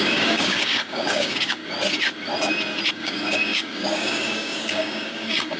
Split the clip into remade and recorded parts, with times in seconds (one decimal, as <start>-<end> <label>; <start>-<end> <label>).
0.0-1.6 remade; 1.6-2.9 recorded; 2.9-5.6 remade